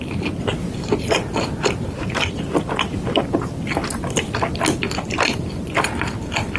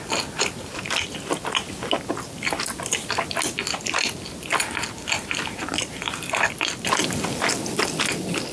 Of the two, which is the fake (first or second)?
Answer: first